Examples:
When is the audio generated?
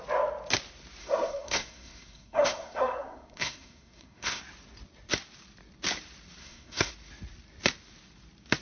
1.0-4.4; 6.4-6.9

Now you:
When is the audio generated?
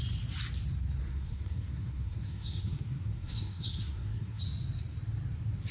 1.0-4.4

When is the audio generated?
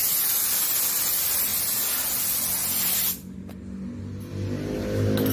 none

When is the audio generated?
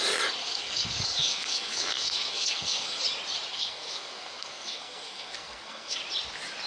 0.4-3.0; 3.5-6.0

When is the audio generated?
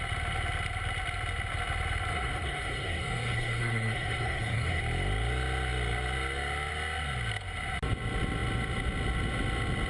2.1-4.8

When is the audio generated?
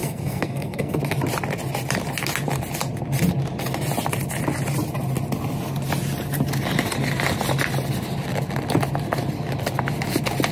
0.0-1.0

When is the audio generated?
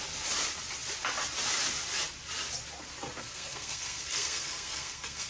3.2-5.3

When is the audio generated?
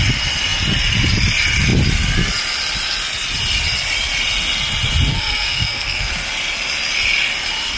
5.1-6.1